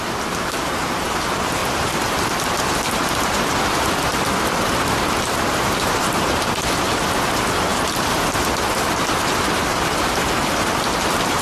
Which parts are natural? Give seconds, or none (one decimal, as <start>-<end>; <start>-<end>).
0.0-1.6; 2.3-4.1; 4.8-7.7; 9.0-11.4